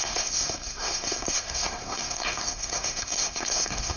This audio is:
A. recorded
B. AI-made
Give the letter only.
B